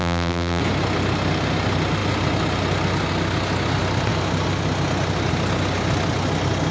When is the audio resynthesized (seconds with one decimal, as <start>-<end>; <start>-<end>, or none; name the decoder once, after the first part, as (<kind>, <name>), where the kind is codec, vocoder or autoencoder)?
0.0-0.6 (vocoder, BigVGAN v2)